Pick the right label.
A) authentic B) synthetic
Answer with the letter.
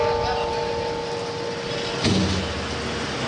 A